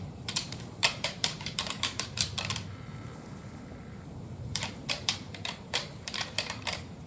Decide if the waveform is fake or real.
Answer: fake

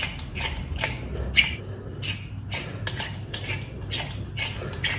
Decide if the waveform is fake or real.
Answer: real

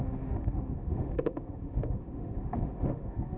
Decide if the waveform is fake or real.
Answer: fake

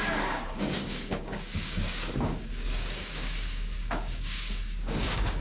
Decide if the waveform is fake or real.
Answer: fake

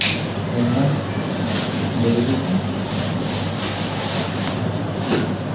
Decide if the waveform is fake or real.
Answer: real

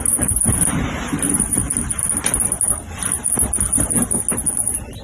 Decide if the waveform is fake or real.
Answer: real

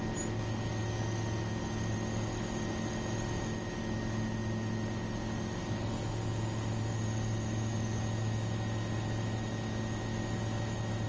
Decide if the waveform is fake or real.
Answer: real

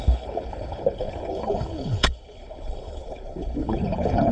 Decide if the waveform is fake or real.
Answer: fake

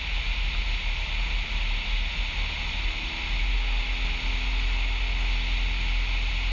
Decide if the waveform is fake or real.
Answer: real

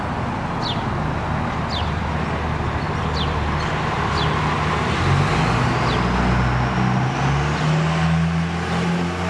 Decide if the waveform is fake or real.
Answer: real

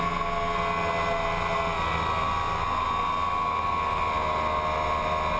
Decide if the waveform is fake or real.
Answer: real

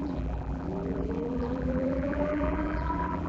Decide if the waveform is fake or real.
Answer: fake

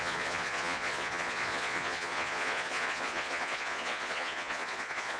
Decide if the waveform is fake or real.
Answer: fake